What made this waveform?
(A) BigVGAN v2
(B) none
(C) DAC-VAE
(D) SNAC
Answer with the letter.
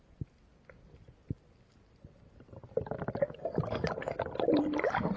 B